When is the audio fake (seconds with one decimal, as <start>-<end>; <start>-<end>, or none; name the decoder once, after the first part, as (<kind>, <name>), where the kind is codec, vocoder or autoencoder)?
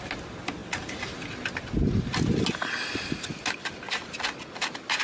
none